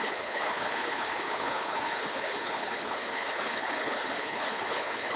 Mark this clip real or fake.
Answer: fake